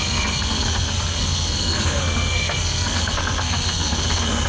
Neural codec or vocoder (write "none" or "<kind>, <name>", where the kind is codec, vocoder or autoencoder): codec, SNAC